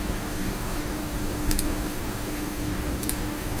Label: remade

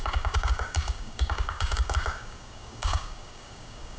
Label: remade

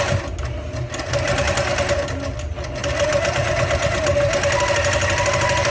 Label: recorded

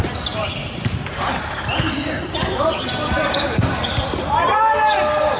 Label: recorded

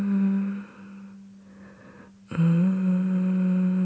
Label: recorded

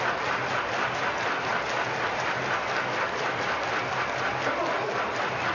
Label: recorded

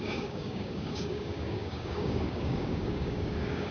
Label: remade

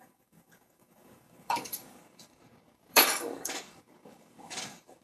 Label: remade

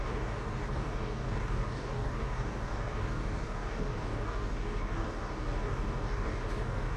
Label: remade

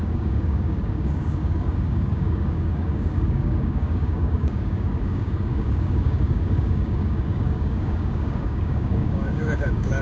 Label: remade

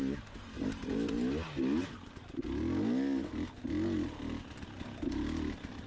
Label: recorded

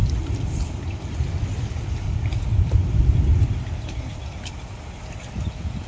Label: recorded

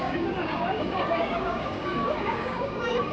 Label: remade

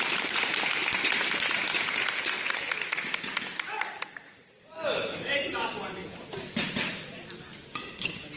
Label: recorded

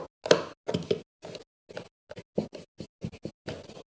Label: recorded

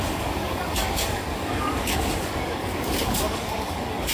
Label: remade